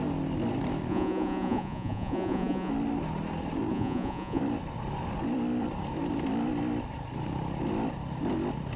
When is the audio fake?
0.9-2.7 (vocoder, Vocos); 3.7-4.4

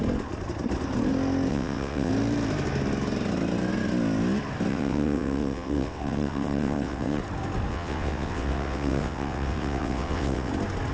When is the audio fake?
1.5-2.1 (vocoder, WaveNeXt); 4.7-7.2; 7.7-10.5

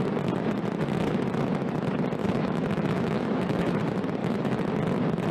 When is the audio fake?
2.2-3.8 (autoencoder, DAC-VAE); 4.2-4.7

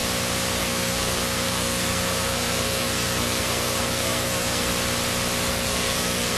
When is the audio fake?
0.6-4.7 (codec, SNAC); 5.5-6.4